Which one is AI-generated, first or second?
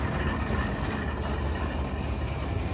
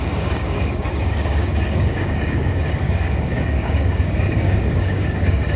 second